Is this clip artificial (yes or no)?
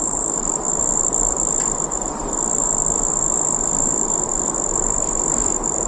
yes